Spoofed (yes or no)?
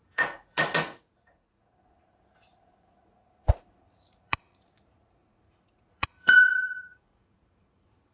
yes